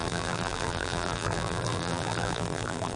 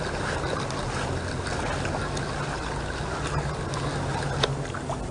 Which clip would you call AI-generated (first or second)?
first